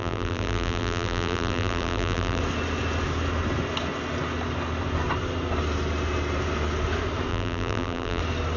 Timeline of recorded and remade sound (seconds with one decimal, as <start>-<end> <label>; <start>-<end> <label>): 0.0-2.4 remade; 2.4-7.3 recorded; 7.3-8.2 remade; 8.2-8.6 recorded